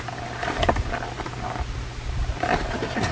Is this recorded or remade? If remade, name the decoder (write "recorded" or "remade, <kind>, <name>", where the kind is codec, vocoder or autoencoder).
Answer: recorded